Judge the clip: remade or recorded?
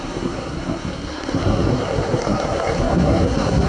remade